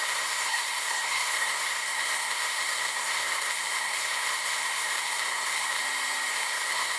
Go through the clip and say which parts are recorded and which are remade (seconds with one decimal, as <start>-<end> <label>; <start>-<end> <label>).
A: 0.0-5.8 remade; 5.8-6.3 recorded; 6.3-7.0 remade